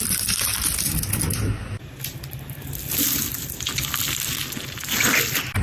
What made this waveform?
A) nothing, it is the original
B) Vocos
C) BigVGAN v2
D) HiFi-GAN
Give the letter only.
A